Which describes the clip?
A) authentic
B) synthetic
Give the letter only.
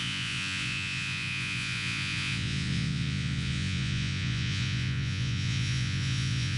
B